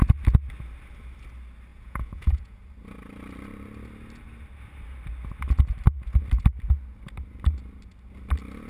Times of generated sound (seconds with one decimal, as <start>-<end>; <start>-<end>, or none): 1.7-2.6